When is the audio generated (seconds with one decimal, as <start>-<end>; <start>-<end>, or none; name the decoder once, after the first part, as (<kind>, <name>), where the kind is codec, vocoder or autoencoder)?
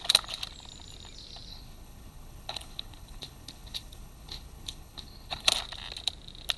1.5-5.5 (codec, HILCodec)